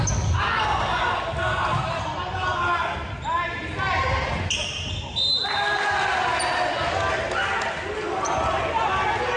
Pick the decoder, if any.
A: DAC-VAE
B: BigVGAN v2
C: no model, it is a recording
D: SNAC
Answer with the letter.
C